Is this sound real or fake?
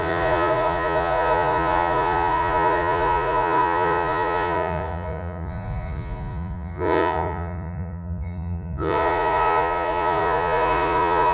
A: fake